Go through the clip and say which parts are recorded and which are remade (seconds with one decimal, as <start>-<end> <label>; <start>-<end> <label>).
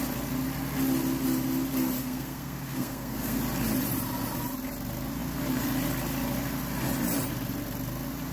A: 0.0-2.0 recorded; 2.0-3.4 remade; 3.4-8.3 recorded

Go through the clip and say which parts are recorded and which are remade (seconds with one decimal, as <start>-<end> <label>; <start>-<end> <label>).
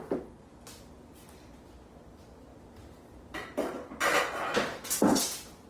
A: 0.0-5.7 recorded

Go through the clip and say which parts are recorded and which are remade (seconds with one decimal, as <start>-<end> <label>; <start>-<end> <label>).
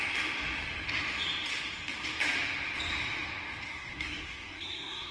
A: 0.0-3.7 recorded; 3.7-5.1 remade